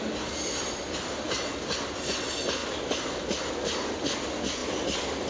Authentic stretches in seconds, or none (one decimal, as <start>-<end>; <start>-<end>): 0.0-5.3